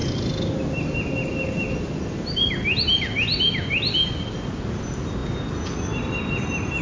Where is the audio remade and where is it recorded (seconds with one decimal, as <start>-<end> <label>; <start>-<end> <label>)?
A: 0.0-6.8 recorded